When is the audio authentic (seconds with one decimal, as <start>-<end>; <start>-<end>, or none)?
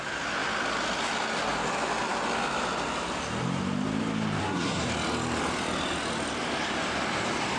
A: 0.0-4.4; 4.9-7.6